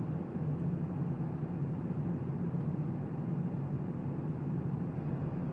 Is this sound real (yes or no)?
yes